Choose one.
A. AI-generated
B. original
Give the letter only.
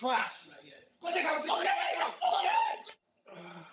A